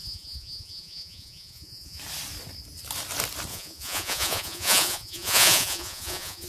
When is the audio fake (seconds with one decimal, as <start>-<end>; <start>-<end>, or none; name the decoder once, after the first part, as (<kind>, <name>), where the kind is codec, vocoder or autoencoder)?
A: 0.0-2.0 (vocoder, Vocos); 3.5-6.5